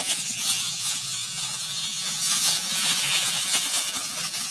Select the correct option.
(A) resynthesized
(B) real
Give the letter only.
A